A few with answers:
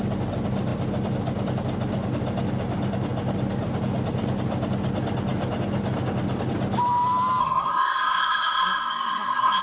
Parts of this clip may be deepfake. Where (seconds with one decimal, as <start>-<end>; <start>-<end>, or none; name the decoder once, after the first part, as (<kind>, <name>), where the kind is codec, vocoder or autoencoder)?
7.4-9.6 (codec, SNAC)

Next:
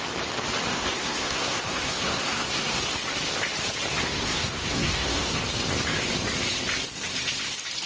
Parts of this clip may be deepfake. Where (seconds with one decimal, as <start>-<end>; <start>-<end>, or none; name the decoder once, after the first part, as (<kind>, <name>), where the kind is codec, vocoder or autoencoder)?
0.7-2.8 (codec, SNAC); 4.0-5.4

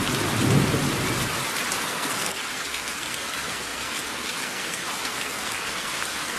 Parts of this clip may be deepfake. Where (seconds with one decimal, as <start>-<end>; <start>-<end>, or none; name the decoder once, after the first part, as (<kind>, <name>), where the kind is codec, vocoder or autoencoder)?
1.8-6.4 (codec, SNAC)